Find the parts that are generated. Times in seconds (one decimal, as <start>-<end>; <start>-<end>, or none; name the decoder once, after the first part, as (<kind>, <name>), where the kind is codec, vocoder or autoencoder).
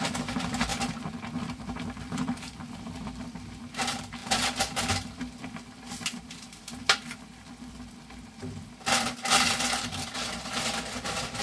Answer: 0.0-11.4 (vocoder, BigVGAN v2)